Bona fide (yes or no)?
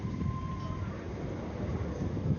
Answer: yes